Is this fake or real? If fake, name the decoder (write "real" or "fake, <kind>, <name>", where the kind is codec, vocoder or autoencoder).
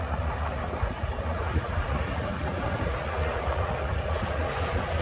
fake, vocoder, Vocos